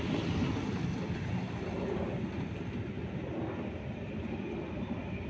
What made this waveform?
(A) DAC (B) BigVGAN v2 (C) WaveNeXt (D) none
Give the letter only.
D